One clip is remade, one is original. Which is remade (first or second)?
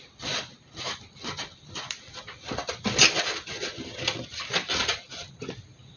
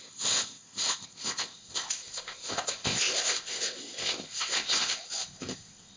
second